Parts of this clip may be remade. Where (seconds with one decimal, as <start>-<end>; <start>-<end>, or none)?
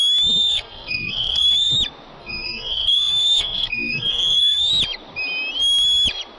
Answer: 0.4-1.7; 2.2-4.7